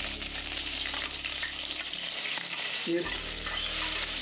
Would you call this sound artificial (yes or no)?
yes